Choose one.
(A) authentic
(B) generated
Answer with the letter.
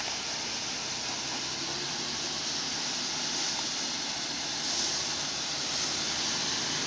A